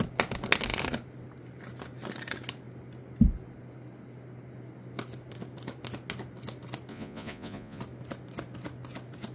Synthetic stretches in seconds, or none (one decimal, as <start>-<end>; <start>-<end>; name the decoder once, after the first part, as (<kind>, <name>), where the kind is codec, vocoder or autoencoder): 6.9-7.8 (vocoder, Vocos)